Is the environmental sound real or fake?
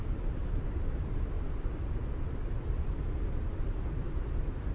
real